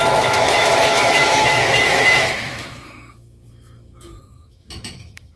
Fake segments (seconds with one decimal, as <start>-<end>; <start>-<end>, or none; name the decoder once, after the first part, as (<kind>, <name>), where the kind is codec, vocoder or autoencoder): 0.0-5.4 (autoencoder, DAC-VAE)